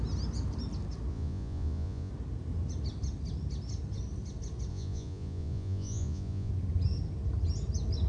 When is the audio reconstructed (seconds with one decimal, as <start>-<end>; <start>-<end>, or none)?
1.1-2.1; 4.7-6.5